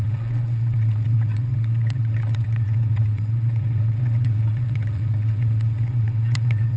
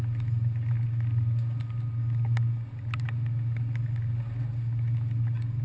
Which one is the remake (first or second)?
first